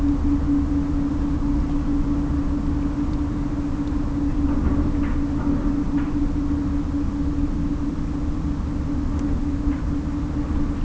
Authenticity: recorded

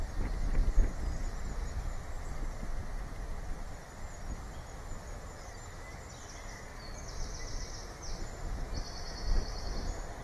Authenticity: recorded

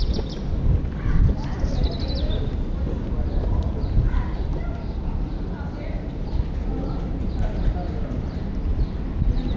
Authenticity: recorded